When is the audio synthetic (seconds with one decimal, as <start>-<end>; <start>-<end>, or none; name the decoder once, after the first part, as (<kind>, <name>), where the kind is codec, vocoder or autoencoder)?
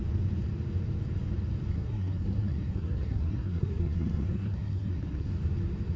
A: 1.7-5.3 (codec, SNAC)